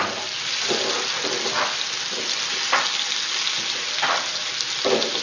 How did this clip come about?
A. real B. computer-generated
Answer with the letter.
A